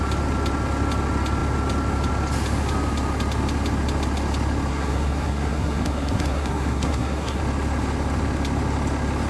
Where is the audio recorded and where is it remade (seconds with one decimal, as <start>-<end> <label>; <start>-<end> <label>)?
0.0-4.7 recorded; 4.7-7.4 remade; 7.4-9.3 recorded